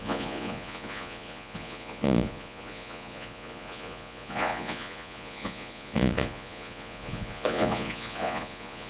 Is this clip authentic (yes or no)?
no